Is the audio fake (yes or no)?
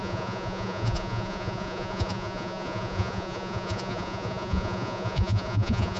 yes